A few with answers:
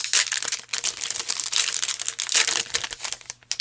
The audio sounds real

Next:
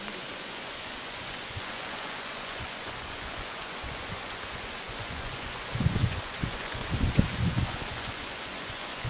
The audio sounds fake